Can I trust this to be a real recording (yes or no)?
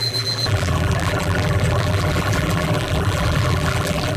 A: no